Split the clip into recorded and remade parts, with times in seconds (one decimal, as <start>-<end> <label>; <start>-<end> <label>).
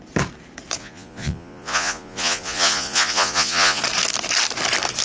0.0-0.8 recorded; 0.8-3.8 remade; 3.8-5.0 recorded